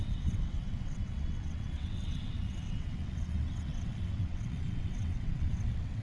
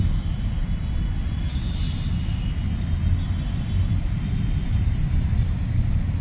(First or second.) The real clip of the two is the second